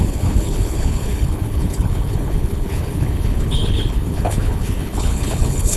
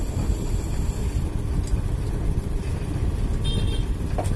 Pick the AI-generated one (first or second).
first